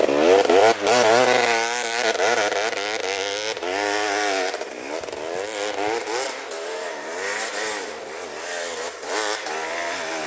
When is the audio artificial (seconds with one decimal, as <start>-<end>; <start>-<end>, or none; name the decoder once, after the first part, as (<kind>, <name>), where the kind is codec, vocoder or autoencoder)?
0.6-1.1 (vocoder, BigVGAN v2)